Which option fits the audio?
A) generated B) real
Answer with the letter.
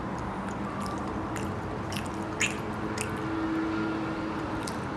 B